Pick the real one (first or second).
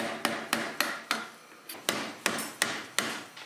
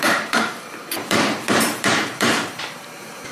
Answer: first